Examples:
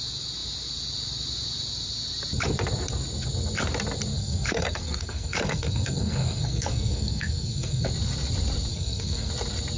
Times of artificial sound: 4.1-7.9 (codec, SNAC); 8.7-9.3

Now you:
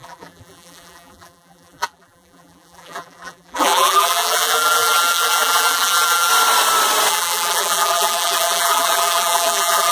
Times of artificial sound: 0.0-6.3 (vocoder, BigVGAN v2); 7.1-9.9

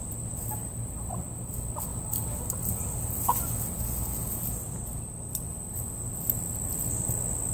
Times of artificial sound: 0.6-1.2 (vocoder, BigVGAN v2); 1.9-2.5

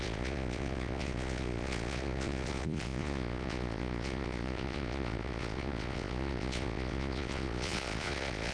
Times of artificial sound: 0.0-8.5 (vocoder, Vocos)

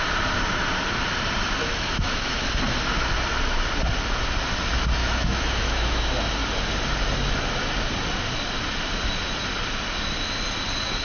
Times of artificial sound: 1.6-2.5 (autoencoder, DAC-VAE); 5.0-6.0

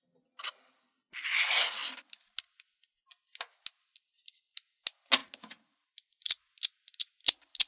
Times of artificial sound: none

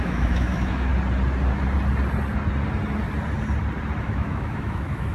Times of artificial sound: 0.0-0.9 (autoencoder, DAC-VAE); 4.0-5.1